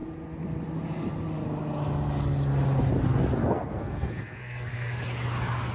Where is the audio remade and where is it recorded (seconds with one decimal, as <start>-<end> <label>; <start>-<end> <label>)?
0.0-3.4 recorded; 3.4-5.0 remade; 5.0-5.7 recorded